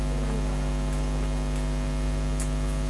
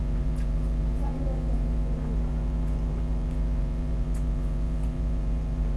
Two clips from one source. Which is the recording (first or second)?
first